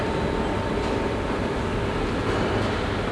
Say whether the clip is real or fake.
real